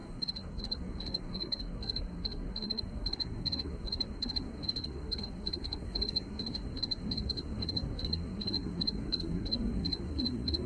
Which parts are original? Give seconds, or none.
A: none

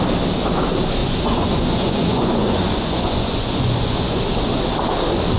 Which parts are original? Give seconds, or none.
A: 0.0-1.0; 4.2-5.4

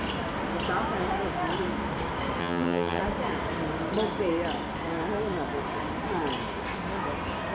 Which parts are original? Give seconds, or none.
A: 0.0-2.4; 3.0-7.5

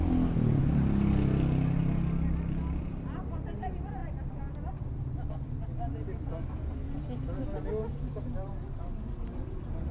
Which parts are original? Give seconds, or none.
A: 0.0-9.9

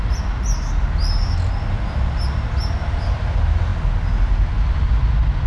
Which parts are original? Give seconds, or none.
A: 0.0-5.5